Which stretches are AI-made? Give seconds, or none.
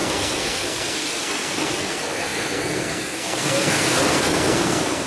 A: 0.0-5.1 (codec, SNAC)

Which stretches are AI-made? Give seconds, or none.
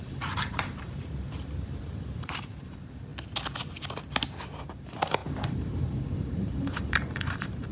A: 0.0-3.1 (vocoder, BigVGAN v2); 4.6-7.7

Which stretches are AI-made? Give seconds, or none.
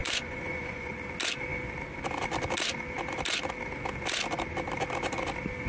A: 0.0-0.9 (vocoder, Vocos)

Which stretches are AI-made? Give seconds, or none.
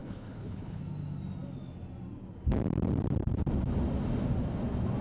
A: 0.0-0.8 (codec, HILCodec)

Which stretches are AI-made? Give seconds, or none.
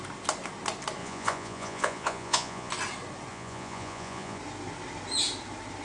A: 1.0-2.7 (vocoder, Vocos); 3.3-4.4